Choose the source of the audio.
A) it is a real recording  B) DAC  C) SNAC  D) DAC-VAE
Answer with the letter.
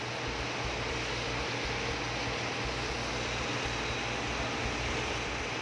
A